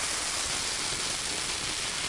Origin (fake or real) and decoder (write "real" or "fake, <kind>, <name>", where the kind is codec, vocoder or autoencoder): real